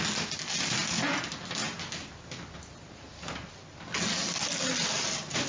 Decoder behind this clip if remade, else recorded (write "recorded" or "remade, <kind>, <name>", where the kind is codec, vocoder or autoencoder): recorded